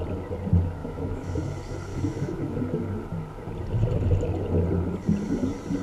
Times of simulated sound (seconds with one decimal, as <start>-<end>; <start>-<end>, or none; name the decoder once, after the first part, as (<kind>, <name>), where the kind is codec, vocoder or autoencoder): 0.8-1.4 (autoencoder, DAC-VAE); 1.9-2.6